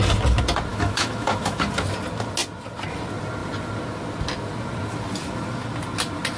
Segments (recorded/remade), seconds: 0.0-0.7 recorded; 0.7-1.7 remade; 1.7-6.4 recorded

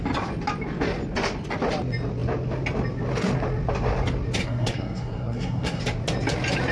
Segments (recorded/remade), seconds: 0.0-4.4 recorded; 4.4-5.8 remade; 5.8-6.7 recorded

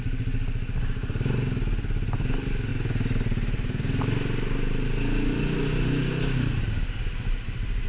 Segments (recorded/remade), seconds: 0.0-7.9 recorded

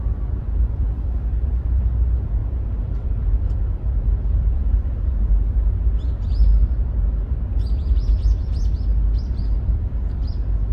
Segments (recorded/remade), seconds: 0.0-6.5 remade; 6.5-8.1 recorded; 8.1-8.6 remade; 8.6-9.3 recorded; 9.3-10.7 remade

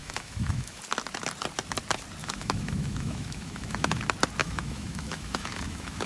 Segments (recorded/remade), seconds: 0.0-0.8 remade; 0.8-2.2 recorded; 2.2-4.0 remade; 4.0-4.4 recorded; 4.4-6.1 remade

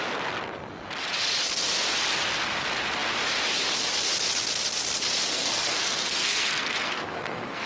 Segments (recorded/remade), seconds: 0.0-5.3 recorded; 5.3-7.7 remade

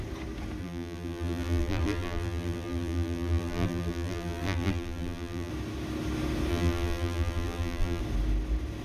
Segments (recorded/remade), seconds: 0.0-0.6 recorded; 0.6-5.5 remade; 5.5-6.5 recorded; 6.5-8.0 remade; 8.0-8.8 recorded